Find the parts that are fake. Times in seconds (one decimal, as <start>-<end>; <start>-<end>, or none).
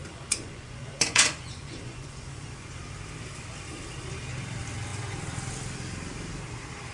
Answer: 0.0-2.8